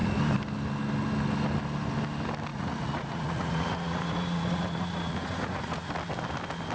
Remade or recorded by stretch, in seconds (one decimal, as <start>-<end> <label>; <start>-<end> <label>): 0.0-2.5 recorded; 2.5-5.9 remade; 5.9-6.7 recorded